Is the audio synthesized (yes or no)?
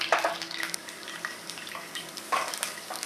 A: yes